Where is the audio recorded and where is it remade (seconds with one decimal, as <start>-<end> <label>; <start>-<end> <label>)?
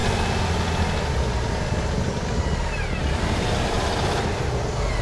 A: 0.0-5.0 recorded